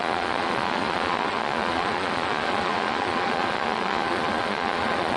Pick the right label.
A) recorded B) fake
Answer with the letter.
B